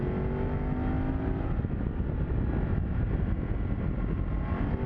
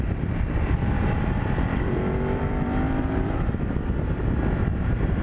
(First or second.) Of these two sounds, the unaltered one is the first